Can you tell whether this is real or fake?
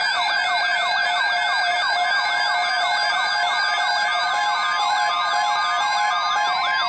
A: real